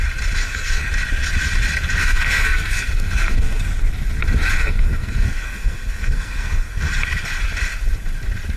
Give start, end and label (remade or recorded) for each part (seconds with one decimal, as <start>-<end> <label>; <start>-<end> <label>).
0.0-0.4 recorded; 0.4-0.9 remade; 0.9-2.0 recorded; 2.0-3.6 remade; 3.6-4.6 recorded; 4.6-6.9 remade; 6.9-8.6 recorded